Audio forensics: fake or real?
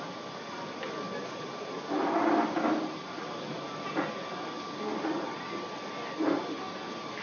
real